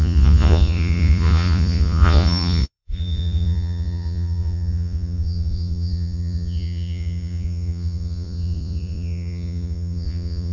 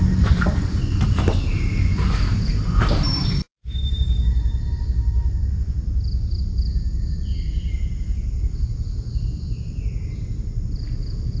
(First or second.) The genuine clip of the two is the second